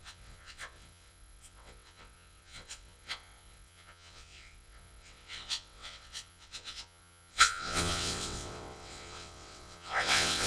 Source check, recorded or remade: remade